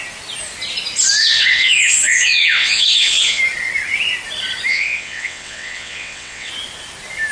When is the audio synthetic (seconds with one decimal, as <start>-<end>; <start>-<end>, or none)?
1.2-3.4; 4.7-6.5